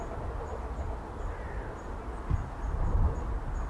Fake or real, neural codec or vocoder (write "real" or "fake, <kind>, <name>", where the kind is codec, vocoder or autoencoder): real